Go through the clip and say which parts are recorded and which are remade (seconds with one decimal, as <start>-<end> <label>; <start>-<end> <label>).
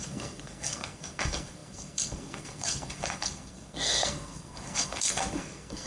0.0-5.9 remade